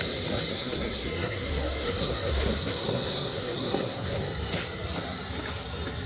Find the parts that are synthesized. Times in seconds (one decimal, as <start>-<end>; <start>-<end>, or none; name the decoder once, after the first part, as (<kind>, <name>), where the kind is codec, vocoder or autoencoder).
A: 0.5-4.2 (codec, SNAC)